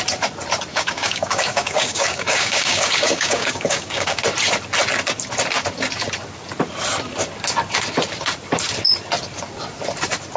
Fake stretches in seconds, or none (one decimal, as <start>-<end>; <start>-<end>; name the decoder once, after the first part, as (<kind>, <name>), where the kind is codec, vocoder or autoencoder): 0.7-4.2 (codec, DAC)